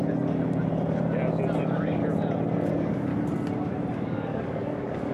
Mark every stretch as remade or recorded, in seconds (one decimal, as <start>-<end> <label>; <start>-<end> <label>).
0.0-1.6 recorded; 1.6-2.0 remade; 2.0-2.7 recorded; 2.7-3.1 remade; 3.1-3.9 recorded; 3.9-5.1 remade